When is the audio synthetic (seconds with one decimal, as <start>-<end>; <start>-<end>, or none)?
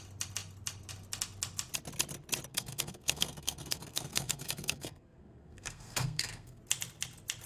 2.5-6.6